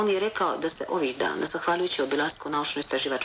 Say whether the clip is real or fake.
real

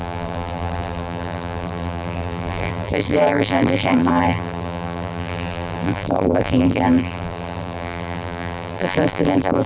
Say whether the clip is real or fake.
fake